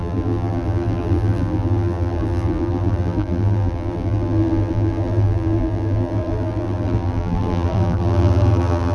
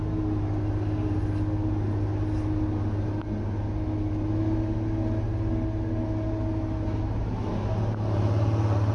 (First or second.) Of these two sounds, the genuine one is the second